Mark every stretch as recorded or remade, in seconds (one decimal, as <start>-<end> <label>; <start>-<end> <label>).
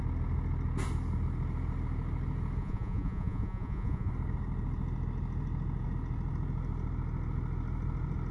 0.0-2.6 recorded; 2.6-4.1 remade; 4.1-8.3 recorded